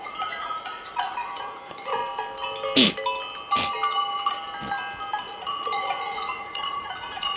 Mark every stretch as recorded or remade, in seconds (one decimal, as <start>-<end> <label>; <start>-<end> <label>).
0.0-2.0 remade; 2.0-5.2 recorded; 5.2-7.4 remade